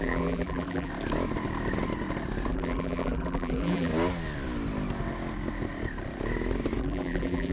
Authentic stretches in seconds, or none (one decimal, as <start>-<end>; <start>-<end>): 0.9-2.5; 3.9-6.8